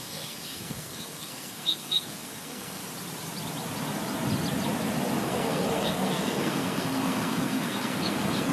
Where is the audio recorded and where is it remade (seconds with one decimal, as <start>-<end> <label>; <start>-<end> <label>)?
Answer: 0.0-2.8 remade; 2.8-5.2 recorded; 5.2-8.5 remade